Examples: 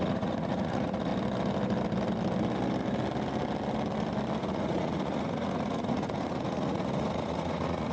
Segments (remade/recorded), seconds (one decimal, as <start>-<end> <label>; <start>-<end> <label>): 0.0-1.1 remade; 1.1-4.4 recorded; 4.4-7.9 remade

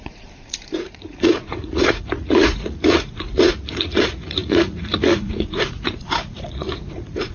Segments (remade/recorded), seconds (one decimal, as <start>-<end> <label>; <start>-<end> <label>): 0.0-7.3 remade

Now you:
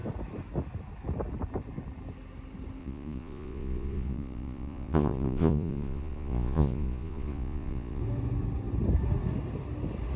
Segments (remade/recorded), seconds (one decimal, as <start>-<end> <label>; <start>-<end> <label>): 0.0-2.8 recorded; 2.8-8.0 remade; 8.0-10.2 recorded

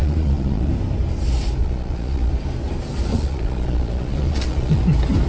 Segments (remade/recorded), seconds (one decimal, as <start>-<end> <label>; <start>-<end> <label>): 0.0-0.7 remade; 0.7-1.6 recorded; 1.6-2.3 remade; 2.3-3.1 recorded; 3.1-4.8 remade; 4.8-5.3 recorded

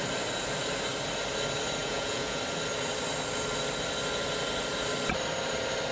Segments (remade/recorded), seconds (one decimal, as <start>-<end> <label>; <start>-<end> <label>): 0.0-1.8 recorded; 1.8-2.4 remade; 2.4-5.9 recorded

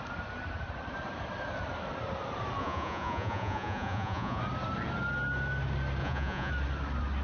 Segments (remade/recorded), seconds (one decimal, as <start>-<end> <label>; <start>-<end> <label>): 0.0-2.6 recorded; 2.6-4.4 remade; 4.4-6.0 recorded; 6.0-6.5 remade; 6.5-7.2 recorded